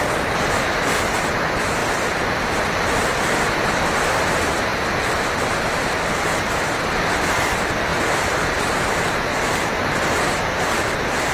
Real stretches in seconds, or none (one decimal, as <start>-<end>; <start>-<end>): 0.0-11.3